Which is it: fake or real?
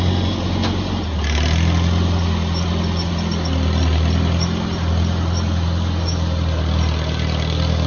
real